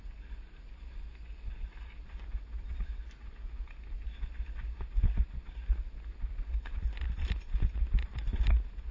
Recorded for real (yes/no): yes